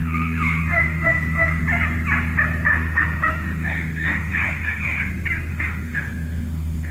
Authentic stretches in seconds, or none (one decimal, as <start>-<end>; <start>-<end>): 1.6-2.7; 5.1-5.5